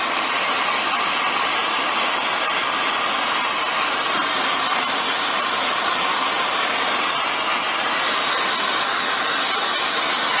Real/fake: real